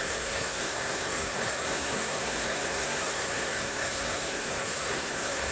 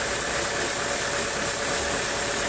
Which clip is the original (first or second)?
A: second